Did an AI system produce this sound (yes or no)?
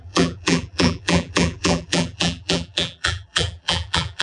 yes